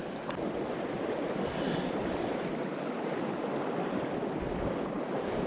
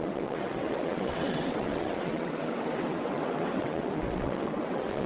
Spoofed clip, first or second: second